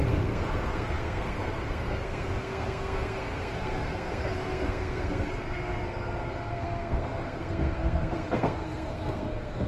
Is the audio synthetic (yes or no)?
yes